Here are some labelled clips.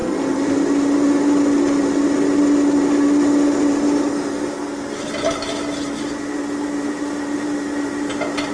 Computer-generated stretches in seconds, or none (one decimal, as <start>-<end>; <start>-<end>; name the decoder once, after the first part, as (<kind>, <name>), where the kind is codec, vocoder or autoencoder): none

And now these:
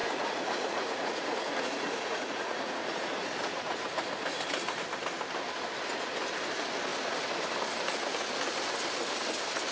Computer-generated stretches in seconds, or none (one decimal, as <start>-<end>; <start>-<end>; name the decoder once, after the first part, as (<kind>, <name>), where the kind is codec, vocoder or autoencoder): 0.0-4.8 (vocoder, Vocos)

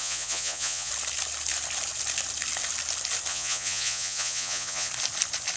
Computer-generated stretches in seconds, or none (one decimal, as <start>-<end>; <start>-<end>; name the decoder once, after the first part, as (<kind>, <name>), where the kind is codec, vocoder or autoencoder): 0.0-0.9 (vocoder, Vocos); 3.3-4.9

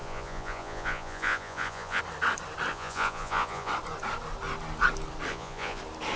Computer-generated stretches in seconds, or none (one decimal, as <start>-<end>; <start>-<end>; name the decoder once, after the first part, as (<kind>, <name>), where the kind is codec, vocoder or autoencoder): 0.0-2.0 (vocoder, Vocos); 2.7-3.7; 5.3-5.8